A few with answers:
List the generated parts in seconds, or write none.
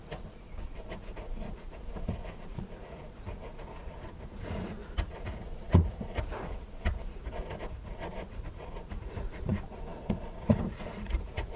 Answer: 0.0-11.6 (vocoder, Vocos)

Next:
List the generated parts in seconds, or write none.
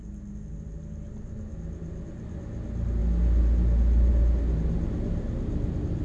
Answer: none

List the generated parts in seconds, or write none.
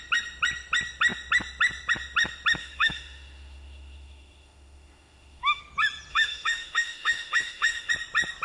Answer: 2.6-5.6 (autoencoder, DAC-VAE); 6.1-7.9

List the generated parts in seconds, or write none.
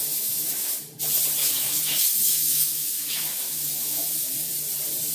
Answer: 0.0-0.7 (autoencoder, DAC-VAE); 1.4-4.5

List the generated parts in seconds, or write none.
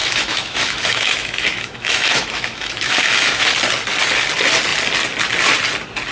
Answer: 0.0-3.5 (autoencoder, DAC-VAE)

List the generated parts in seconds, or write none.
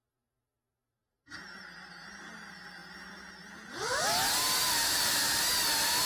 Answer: 0.9-2.2 (vocoder, BigVGAN v2); 4.6-5.4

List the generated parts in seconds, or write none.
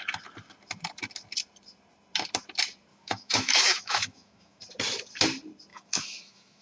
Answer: 2.9-4.6 (autoencoder, DAC-VAE); 5.7-6.6